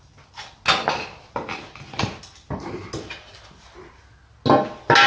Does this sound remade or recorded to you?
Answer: recorded